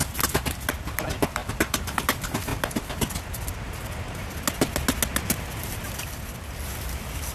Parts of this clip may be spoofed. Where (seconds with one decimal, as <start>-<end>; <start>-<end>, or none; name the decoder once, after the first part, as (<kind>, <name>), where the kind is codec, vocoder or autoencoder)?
1.4-2.0 (vocoder, BigVGAN v2)